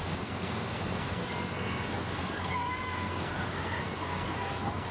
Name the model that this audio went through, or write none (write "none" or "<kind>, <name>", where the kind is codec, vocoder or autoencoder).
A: codec, SNAC